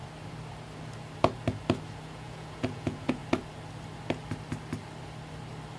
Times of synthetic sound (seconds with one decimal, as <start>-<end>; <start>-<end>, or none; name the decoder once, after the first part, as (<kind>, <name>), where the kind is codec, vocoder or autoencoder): 2.0-3.2 (vocoder, Vocos)